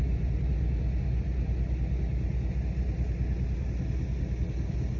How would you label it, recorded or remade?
recorded